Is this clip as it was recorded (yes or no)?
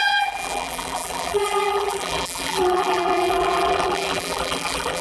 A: no